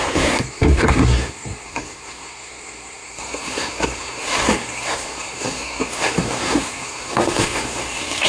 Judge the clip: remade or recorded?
remade